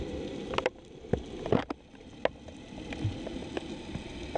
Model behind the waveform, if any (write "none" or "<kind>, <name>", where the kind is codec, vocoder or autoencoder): none